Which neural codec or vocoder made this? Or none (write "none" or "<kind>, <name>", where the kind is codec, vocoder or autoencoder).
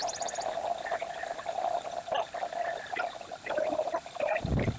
none